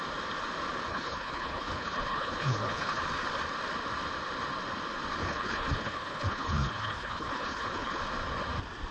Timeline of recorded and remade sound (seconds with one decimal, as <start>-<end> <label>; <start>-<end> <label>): 0.0-0.9 recorded; 0.9-3.0 remade; 3.0-5.2 recorded; 5.2-8.0 remade; 8.0-8.9 recorded